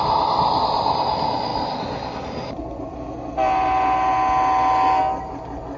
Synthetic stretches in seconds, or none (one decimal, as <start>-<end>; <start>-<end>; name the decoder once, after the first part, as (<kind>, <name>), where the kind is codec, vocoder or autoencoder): none